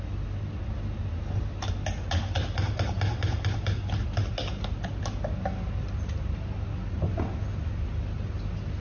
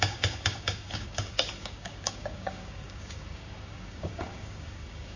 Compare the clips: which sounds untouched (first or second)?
first